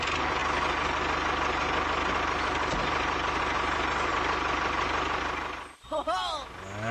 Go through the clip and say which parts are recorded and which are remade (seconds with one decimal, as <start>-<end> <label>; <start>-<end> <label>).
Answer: 0.0-6.9 recorded